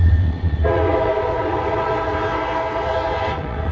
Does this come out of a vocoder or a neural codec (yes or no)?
yes